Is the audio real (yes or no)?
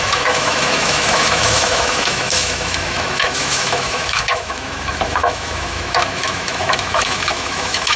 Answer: no